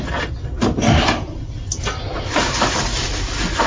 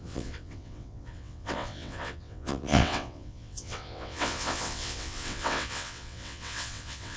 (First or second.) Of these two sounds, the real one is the first